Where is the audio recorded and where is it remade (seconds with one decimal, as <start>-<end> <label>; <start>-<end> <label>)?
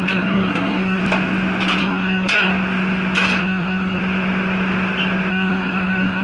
0.0-1.0 remade; 1.0-1.8 recorded; 1.8-2.5 remade; 2.5-3.4 recorded; 3.4-4.0 remade; 4.0-5.3 recorded; 5.3-6.2 remade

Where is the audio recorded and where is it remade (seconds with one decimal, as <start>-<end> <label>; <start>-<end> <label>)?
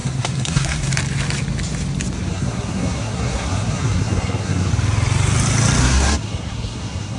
0.0-0.9 remade; 0.9-2.3 recorded; 2.3-4.7 remade; 4.7-5.8 recorded; 5.8-7.2 remade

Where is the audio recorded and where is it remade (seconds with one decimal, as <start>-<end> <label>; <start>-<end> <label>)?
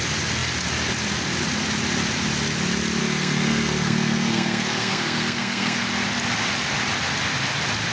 0.0-3.0 recorded; 3.0-5.8 remade; 5.8-7.9 recorded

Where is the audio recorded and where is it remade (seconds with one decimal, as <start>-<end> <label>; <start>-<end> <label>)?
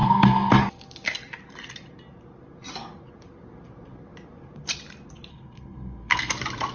0.0-0.6 remade; 0.6-5.3 recorded; 5.3-6.3 remade; 6.3-6.7 recorded